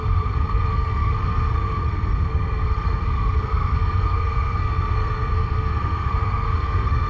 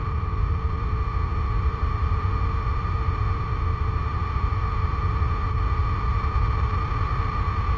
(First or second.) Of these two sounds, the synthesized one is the first